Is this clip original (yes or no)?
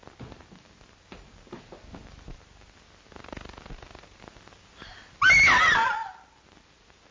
yes